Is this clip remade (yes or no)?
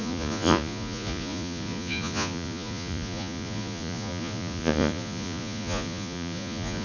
yes